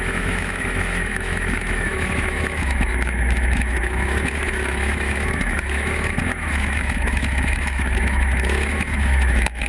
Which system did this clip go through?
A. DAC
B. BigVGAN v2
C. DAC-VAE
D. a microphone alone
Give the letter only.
C